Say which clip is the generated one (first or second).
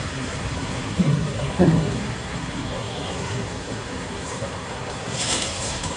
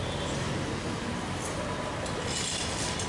first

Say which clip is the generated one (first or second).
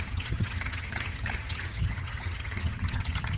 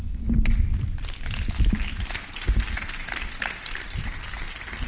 first